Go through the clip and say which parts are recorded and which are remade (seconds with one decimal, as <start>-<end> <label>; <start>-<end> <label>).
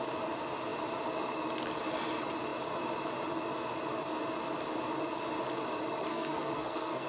0.0-6.1 recorded; 6.1-7.1 remade